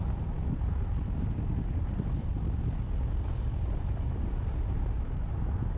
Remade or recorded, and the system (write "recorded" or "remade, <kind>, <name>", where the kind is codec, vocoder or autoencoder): recorded